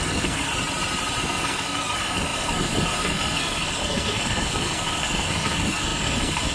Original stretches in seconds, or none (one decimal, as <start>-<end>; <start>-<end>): 0.5-1.2